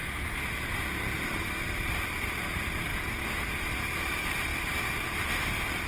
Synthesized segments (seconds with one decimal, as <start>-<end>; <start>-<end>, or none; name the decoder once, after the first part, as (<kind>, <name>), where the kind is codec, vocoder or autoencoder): 0.5-2.9 (vocoder, BigVGAN v2); 3.6-4.5